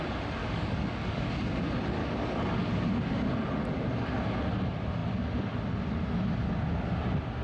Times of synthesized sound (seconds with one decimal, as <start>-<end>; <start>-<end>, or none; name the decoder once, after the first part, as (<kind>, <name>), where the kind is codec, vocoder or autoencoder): 0.4-1.6 (codec, DAC); 2.0-3.0